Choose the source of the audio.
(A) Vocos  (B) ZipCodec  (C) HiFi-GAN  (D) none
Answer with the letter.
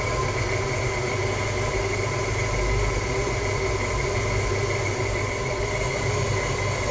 D